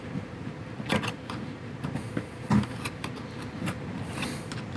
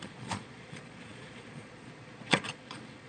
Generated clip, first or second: second